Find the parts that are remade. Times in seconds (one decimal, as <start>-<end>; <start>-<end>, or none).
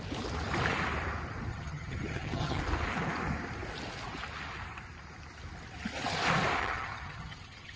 1.5-2.6; 6.6-7.8